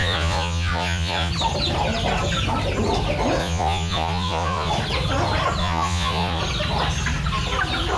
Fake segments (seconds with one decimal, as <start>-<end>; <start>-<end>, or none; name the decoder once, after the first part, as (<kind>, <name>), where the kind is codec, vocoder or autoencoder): 0.0-1.3 (vocoder, Vocos); 3.4-4.7; 5.6-6.4